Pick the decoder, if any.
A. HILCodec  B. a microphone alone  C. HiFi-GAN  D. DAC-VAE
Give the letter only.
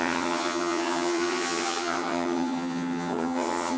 C